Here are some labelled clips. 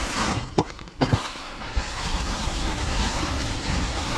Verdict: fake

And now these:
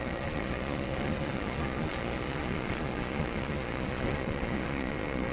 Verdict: fake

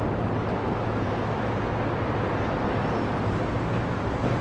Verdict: real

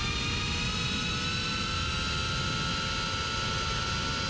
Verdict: real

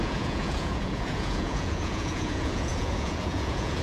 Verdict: fake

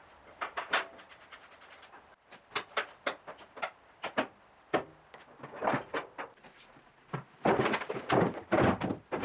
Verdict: real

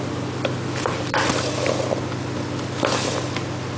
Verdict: real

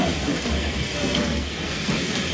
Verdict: fake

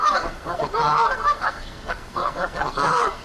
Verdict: fake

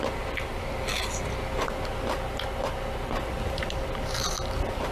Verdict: real